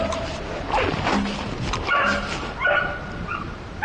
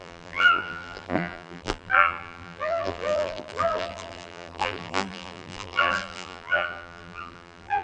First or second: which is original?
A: first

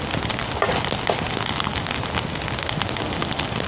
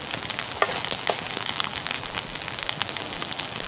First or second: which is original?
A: first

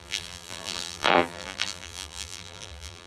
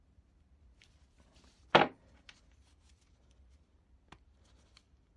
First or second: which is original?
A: second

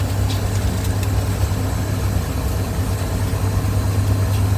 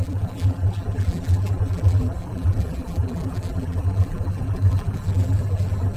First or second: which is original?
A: first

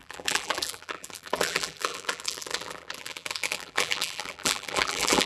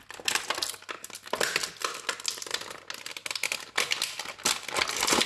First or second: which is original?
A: second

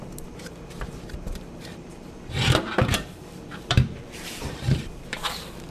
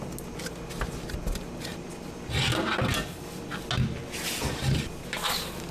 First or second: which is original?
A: second